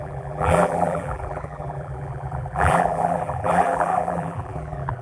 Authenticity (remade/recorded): remade